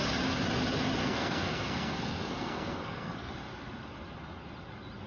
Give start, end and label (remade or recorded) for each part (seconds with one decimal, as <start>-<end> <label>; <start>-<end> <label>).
0.0-1.0 recorded; 1.0-3.3 remade; 3.3-5.1 recorded